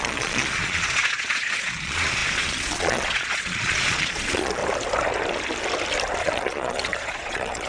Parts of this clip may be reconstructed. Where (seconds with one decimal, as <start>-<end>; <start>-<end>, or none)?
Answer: 0.0-4.6; 6.2-7.7